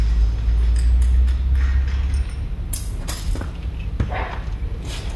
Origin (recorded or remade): recorded